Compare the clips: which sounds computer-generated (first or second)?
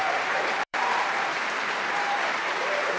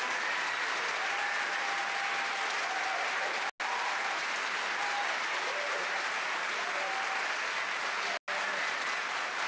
first